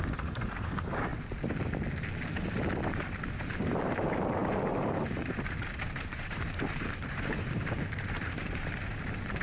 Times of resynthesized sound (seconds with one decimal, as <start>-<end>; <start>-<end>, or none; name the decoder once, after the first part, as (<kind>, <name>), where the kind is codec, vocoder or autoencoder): 0.0-1.1 (vocoder, BigVGAN v2); 2.9-9.4